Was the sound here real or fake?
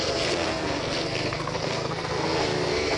fake